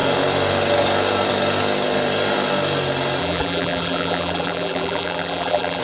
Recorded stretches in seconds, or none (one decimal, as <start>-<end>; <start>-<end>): 0.0-3.2